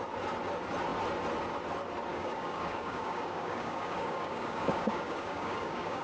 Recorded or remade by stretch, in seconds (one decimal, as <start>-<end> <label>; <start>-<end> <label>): 0.0-2.1 recorded; 2.1-6.0 remade